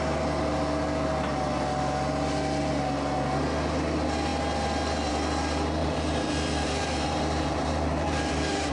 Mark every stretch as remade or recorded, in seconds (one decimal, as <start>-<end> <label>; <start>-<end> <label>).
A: 0.0-5.8 recorded; 5.8-8.7 remade

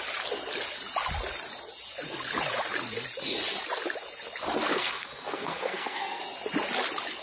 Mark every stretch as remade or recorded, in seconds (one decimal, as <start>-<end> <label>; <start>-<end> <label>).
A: 0.0-4.7 recorded; 4.7-6.2 remade; 6.2-7.2 recorded

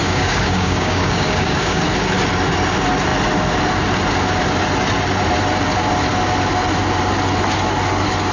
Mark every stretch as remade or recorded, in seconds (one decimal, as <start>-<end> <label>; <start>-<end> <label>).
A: 0.0-1.8 remade; 1.8-8.3 recorded

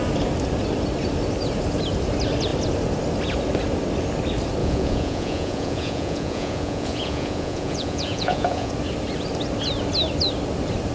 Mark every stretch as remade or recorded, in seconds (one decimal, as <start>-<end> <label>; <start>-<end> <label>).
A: 0.0-4.6 recorded; 4.6-8.7 remade; 8.7-10.9 recorded

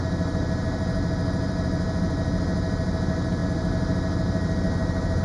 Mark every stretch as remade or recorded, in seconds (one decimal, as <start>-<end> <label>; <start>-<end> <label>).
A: 0.0-5.2 recorded